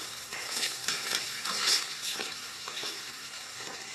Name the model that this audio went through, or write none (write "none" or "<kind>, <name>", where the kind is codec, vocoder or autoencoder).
codec, SNAC